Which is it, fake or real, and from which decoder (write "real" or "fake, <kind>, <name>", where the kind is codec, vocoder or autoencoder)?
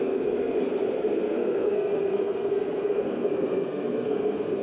fake, codec, SNAC